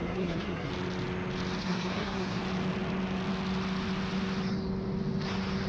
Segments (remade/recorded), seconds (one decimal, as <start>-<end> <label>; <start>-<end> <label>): 0.0-0.7 remade; 0.7-1.6 recorded; 1.6-2.4 remade; 2.4-5.7 recorded